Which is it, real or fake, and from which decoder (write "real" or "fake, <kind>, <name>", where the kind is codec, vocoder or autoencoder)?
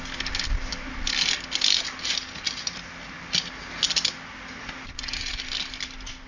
real